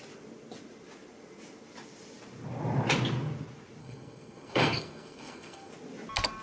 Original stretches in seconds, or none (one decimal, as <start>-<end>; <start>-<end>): 0.0-3.8; 5.7-6.4